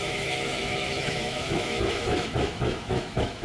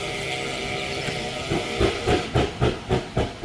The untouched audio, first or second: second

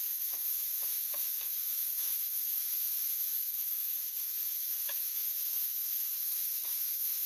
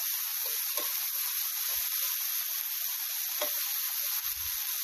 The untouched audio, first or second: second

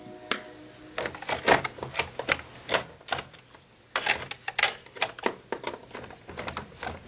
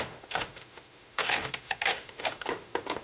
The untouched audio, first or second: first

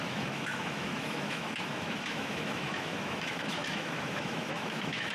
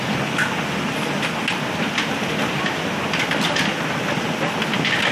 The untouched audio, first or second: second